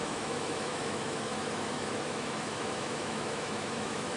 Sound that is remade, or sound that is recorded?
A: remade